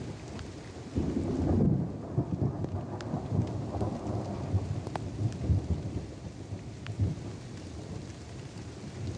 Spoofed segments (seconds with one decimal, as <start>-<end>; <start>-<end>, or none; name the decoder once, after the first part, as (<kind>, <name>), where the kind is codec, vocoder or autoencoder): none

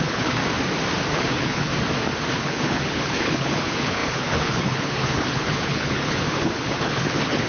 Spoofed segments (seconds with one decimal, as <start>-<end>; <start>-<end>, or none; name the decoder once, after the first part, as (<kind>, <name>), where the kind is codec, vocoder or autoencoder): 0.0-0.4 (codec, HILCodec); 1.1-1.7; 2.3-7.5

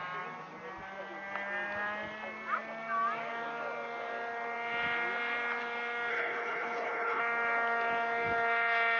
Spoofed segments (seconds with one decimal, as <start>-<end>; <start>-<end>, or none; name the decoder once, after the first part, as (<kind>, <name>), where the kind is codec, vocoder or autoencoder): 6.1-7.2 (codec, HILCodec)

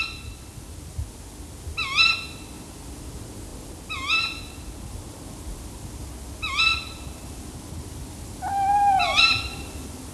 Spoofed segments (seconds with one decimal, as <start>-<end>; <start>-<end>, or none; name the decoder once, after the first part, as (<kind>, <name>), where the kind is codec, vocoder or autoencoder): none

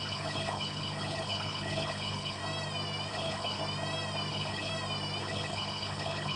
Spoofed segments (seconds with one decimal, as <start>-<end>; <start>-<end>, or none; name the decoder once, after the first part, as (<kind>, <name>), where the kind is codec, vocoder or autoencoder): 0.0-2.4 (codec, HILCodec); 3.1-3.6; 4.3-4.7; 5.2-6.4